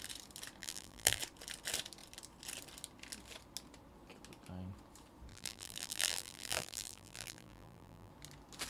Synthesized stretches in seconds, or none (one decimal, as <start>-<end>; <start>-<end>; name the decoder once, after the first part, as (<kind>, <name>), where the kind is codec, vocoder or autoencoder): 0.6-1.2 (vocoder, BigVGAN v2); 5.3-8.1